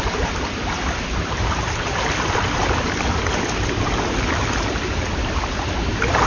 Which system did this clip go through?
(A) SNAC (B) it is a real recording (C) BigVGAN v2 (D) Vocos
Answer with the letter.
B